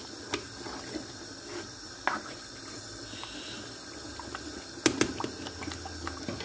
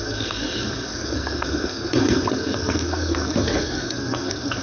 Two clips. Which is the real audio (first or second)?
first